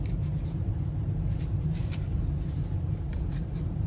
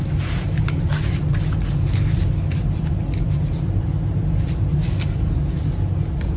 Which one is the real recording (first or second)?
second